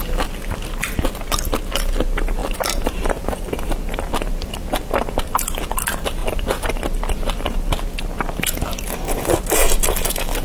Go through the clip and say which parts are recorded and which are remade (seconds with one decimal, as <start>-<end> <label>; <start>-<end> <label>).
0.0-2.4 recorded; 2.4-3.5 remade; 3.5-6.2 recorded; 6.2-6.7 remade; 6.7-10.4 recorded